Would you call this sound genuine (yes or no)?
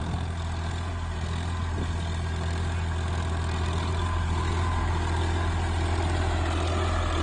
yes